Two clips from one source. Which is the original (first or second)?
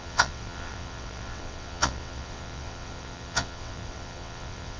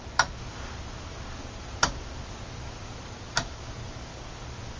second